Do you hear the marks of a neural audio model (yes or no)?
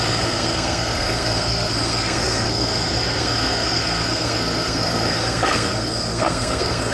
yes